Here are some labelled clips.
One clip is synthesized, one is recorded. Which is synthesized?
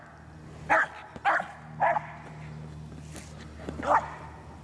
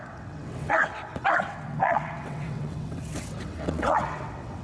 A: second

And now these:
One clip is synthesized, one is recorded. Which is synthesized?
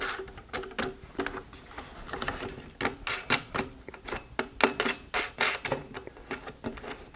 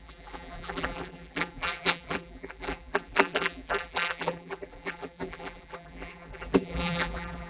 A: second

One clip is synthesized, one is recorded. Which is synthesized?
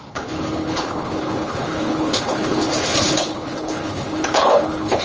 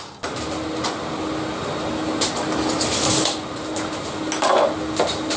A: first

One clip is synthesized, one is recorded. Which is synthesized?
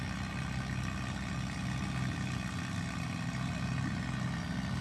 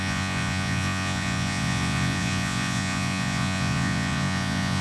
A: second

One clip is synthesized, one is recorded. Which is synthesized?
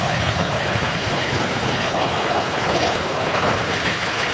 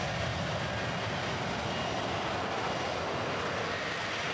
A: first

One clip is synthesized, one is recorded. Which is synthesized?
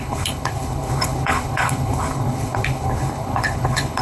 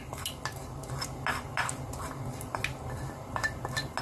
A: first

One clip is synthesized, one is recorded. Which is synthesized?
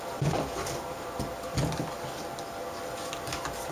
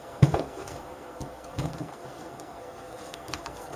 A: second